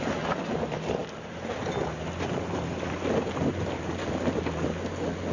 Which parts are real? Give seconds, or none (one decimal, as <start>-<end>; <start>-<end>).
0.0-5.3